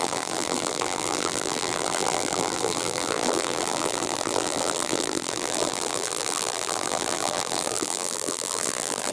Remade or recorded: remade